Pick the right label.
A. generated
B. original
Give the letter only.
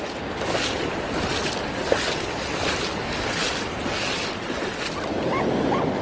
B